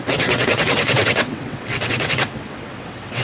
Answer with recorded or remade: remade